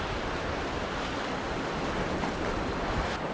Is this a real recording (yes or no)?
yes